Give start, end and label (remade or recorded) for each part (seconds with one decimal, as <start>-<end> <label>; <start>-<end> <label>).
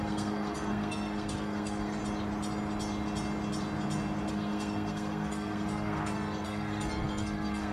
0.0-2.0 remade; 2.0-4.3 recorded; 4.3-7.7 remade